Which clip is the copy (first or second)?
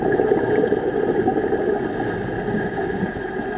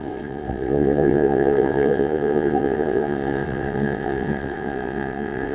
second